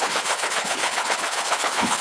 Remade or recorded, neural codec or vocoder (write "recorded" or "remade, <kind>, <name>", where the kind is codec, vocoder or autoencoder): remade, codec, HILCodec